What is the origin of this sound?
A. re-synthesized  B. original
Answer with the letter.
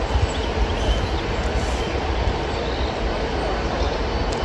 B